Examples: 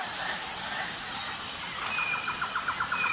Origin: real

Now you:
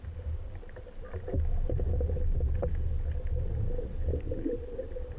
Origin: real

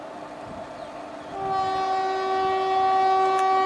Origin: real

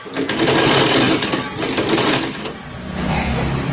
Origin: real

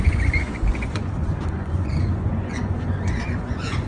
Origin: fake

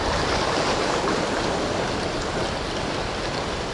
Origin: real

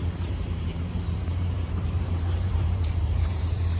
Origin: fake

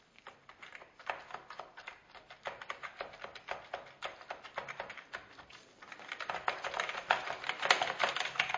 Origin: real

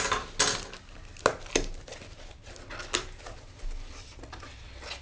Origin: real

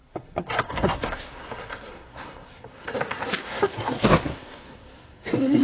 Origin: fake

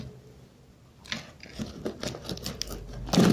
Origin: real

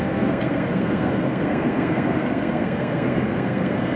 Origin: fake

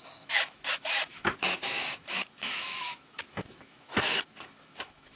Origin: fake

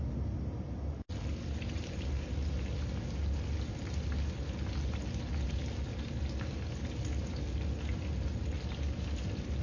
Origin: real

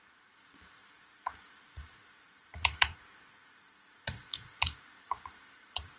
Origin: fake